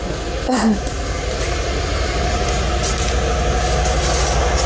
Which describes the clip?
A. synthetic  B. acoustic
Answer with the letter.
B